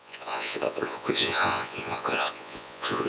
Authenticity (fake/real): fake